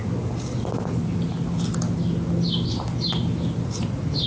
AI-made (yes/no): no